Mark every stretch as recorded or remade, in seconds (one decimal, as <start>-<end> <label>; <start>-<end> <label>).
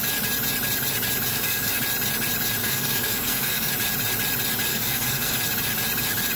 0.0-1.3 recorded; 1.3-1.8 remade; 1.8-2.6 recorded; 2.6-3.7 remade; 3.7-4.7 recorded; 4.7-5.4 remade; 5.4-6.4 recorded